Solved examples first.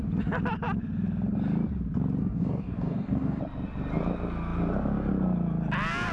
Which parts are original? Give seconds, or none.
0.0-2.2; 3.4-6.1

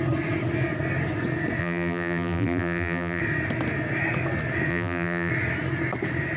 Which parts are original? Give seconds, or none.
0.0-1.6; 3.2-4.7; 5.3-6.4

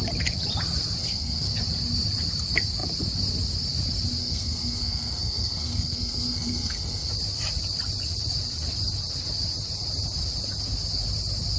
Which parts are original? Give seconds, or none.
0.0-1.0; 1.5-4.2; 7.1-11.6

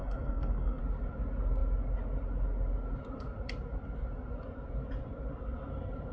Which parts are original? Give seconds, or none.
0.8-6.1

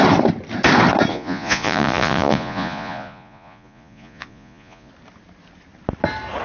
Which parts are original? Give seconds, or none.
0.0-1.1; 4.9-6.4